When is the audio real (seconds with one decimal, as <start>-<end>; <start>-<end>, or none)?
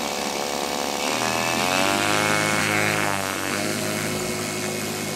0.0-2.6; 3.8-5.2